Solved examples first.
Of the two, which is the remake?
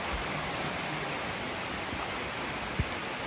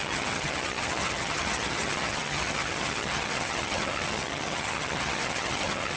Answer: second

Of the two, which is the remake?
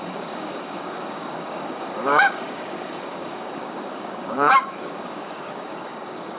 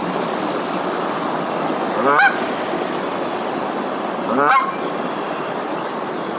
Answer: first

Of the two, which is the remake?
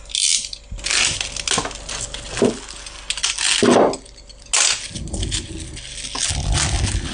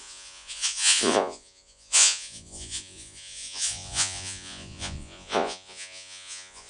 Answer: second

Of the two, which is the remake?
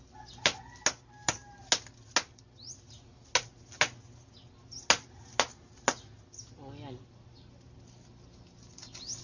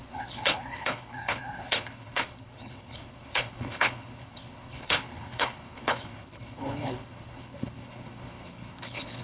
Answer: second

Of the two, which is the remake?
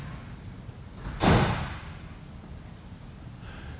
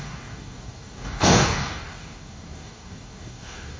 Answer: second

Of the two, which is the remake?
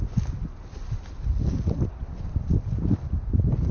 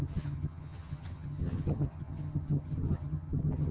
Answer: second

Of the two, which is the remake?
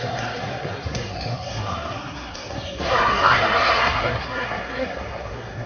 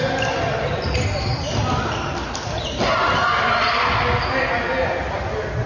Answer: first